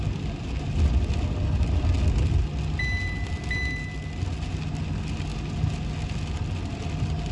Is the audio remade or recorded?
recorded